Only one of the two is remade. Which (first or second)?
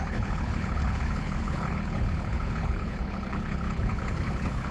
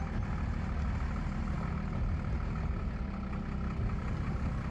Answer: first